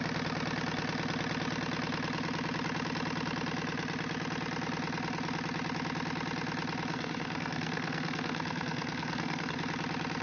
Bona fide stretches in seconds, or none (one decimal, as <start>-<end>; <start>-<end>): 0.0-6.9; 9.6-10.2